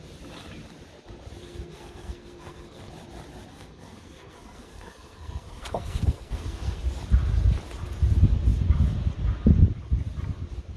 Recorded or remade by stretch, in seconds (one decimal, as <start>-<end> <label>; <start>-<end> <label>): 0.0-1.4 recorded; 1.4-2.9 remade; 2.9-3.5 recorded; 3.5-6.8 remade; 6.8-10.8 recorded